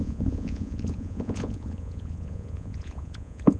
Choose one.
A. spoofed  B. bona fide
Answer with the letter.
A